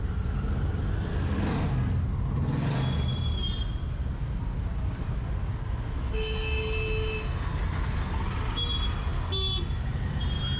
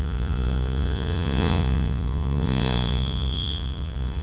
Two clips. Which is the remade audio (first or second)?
second